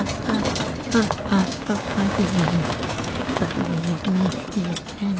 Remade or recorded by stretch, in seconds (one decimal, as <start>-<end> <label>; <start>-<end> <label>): 0.0-1.4 recorded; 1.4-4.0 remade; 4.0-5.2 recorded